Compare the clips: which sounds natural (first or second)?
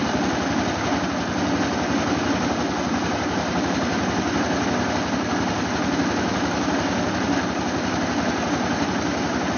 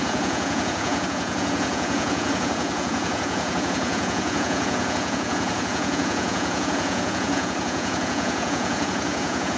first